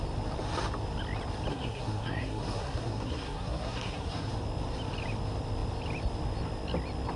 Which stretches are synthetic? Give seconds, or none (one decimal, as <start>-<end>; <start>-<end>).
1.5-4.3